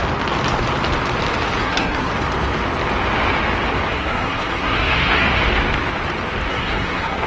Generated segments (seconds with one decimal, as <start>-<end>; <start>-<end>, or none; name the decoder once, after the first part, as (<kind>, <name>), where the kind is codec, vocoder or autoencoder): 1.6-2.1 (codec, SNAC); 3.9-5.3; 6.5-7.3